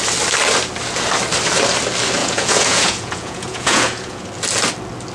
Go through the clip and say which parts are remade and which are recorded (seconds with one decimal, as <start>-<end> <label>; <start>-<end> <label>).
0.0-2.2 recorded; 2.2-4.3 remade; 4.3-5.1 recorded